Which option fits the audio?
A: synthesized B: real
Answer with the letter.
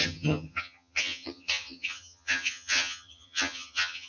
A